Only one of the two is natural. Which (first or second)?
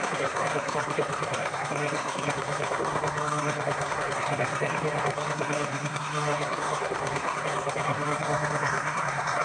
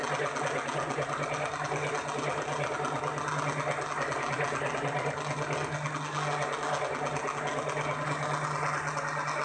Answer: second